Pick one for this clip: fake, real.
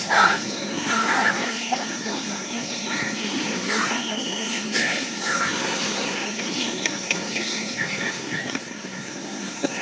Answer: fake